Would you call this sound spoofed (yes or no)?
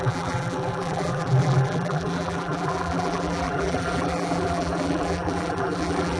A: yes